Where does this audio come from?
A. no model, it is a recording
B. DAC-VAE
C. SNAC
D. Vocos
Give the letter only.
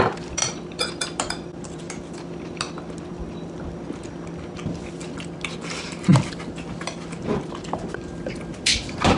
A